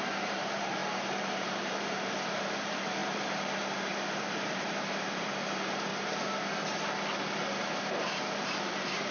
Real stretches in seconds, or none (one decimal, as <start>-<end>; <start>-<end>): 5.9-8.2